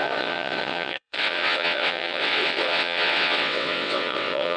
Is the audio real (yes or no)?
no